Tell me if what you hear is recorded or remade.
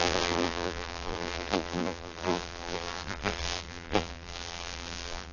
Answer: remade